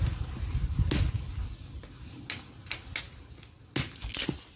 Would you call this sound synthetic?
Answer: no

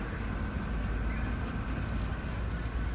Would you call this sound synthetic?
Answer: no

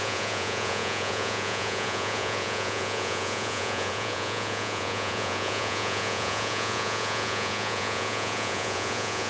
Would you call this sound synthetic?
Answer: yes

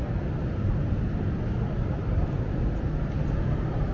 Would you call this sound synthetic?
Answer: no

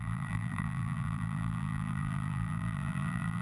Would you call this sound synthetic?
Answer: yes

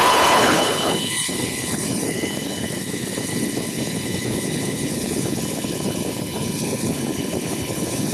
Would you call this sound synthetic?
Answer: yes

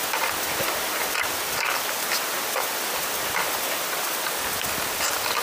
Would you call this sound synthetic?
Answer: no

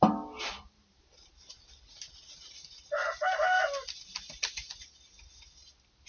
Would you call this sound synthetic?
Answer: no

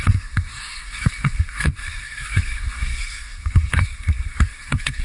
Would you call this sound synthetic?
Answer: yes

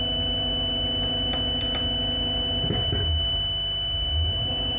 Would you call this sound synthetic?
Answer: no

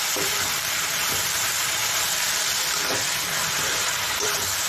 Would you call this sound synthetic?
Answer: yes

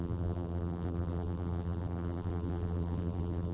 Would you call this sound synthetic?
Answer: yes